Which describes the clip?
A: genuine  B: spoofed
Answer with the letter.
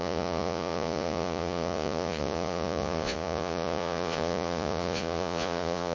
B